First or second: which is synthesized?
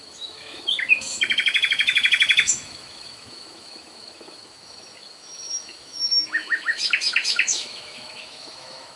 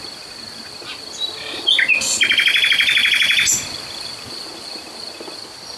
first